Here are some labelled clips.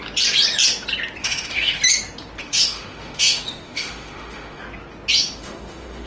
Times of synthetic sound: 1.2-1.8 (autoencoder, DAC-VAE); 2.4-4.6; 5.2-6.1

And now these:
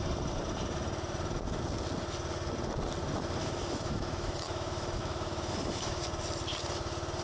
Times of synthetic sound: 3.4-6.0 (autoencoder, DAC-VAE)